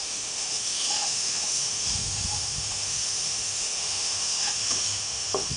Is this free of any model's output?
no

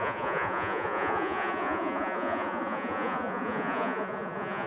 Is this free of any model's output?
no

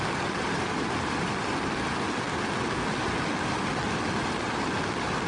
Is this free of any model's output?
yes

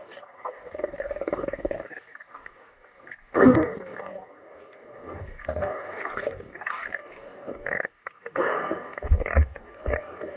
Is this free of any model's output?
no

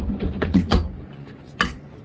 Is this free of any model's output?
no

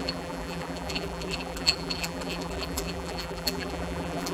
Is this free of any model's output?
no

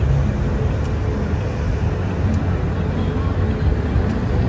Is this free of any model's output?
yes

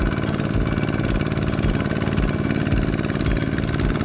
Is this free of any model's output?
yes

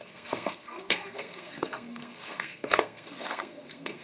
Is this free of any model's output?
no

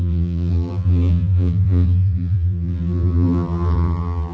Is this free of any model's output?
no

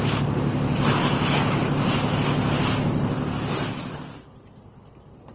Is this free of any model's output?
yes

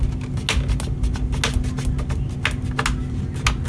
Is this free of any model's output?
yes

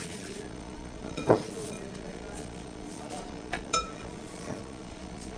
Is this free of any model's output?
no